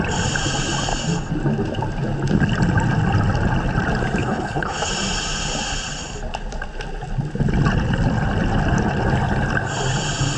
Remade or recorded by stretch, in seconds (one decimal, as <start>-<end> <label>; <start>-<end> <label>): 0.0-4.2 recorded; 4.2-4.9 remade; 4.9-10.4 recorded